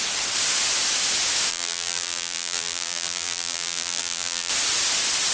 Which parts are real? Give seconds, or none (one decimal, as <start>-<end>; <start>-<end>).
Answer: 0.0-1.5; 4.5-5.3